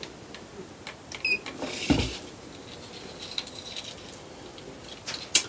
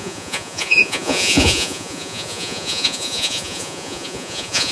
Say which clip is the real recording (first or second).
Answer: first